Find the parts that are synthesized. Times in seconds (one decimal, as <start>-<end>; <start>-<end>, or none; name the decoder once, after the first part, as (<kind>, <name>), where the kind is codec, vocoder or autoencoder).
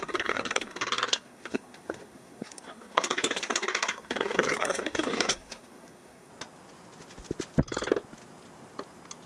0.0-6.3 (codec, SNAC)